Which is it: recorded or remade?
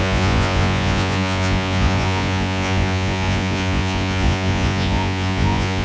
remade